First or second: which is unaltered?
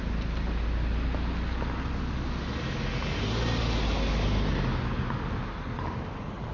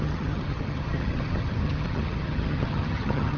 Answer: first